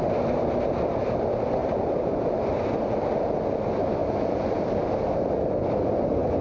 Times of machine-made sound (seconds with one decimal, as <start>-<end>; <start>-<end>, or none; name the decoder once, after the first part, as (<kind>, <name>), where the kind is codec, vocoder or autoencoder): none